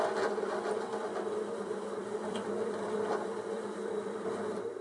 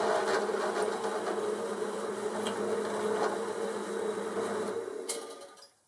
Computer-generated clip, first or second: first